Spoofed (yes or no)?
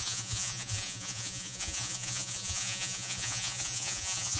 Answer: yes